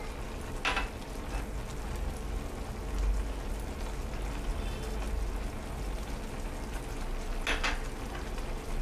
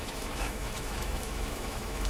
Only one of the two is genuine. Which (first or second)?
first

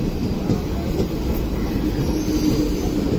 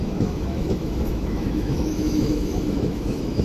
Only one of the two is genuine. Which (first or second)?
first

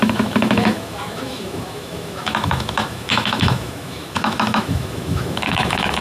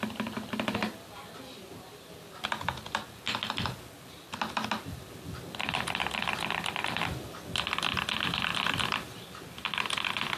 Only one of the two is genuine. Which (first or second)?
second